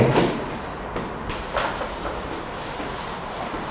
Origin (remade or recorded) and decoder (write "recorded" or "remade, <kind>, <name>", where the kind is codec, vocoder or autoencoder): recorded